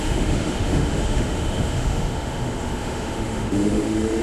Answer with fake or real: fake